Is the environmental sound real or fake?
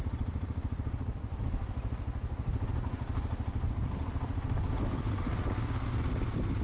real